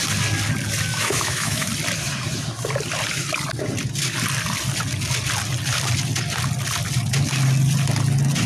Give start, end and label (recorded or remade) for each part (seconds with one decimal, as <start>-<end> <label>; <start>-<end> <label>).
0.0-0.9 recorded; 0.9-1.7 remade; 1.7-8.5 recorded